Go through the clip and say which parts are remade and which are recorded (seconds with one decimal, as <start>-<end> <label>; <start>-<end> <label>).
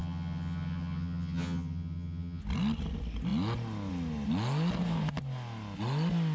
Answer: 0.0-2.4 remade; 2.4-6.3 recorded